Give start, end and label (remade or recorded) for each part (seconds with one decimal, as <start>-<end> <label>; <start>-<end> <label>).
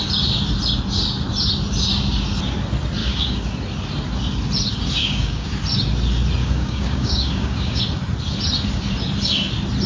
0.0-3.0 recorded; 3.0-3.5 remade; 3.5-5.0 recorded; 5.0-5.5 remade; 5.5-6.4 recorded; 6.4-7.8 remade; 7.8-9.9 recorded